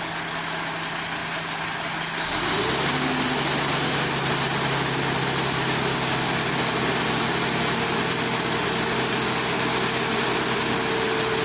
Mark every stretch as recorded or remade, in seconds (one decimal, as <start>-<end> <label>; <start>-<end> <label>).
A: 0.0-11.4 recorded